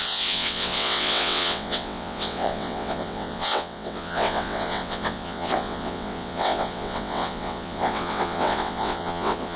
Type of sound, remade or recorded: remade